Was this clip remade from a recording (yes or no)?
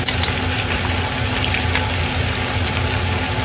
no